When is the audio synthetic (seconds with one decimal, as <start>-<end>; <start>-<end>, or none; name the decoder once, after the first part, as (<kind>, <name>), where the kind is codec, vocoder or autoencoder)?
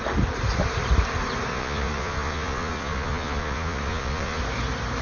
1.5-4.4 (vocoder, Vocos)